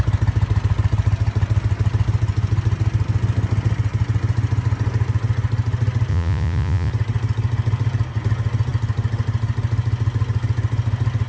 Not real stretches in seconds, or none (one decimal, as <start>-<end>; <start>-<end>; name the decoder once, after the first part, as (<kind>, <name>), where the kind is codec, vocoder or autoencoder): 6.1-6.9 (vocoder, Vocos)